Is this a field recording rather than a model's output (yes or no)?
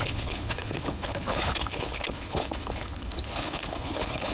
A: no